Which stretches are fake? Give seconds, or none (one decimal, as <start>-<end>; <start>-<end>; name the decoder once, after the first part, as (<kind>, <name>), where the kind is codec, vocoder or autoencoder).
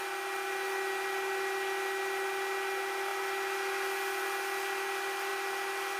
none